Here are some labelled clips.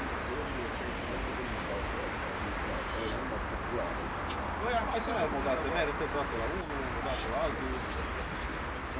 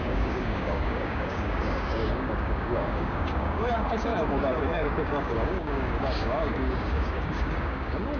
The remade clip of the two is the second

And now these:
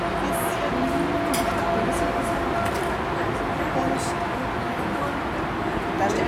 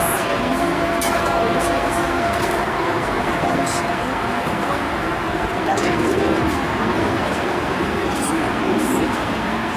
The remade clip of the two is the second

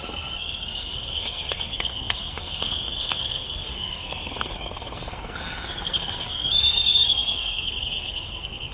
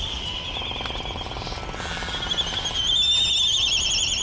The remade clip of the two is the first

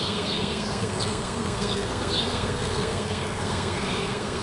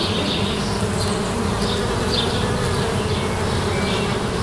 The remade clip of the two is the first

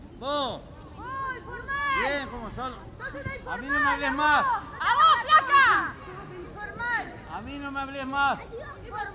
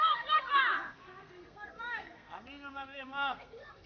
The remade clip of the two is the second